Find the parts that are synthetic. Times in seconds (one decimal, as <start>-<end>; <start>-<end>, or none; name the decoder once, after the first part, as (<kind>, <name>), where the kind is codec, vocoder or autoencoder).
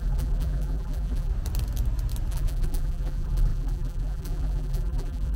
0.0-1.3 (vocoder, BigVGAN v2); 2.3-5.4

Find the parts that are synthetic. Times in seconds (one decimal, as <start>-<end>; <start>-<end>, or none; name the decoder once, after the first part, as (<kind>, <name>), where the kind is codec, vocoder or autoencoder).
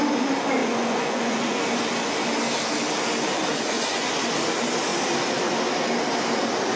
0.6-1.6 (vocoder, Vocos); 3.5-4.1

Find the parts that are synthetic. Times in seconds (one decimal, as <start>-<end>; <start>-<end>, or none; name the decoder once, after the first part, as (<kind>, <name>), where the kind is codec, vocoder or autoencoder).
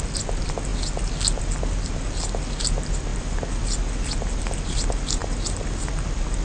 none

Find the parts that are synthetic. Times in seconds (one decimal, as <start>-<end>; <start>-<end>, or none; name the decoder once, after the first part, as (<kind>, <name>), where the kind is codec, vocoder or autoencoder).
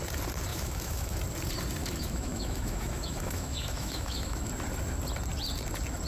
0.5-1.2 (autoencoder, DAC-VAE); 1.8-4.5